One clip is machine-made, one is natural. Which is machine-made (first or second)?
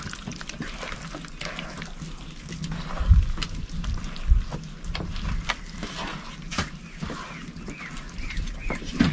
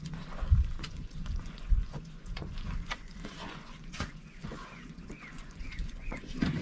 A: second